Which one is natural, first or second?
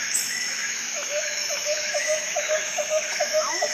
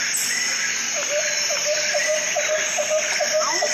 second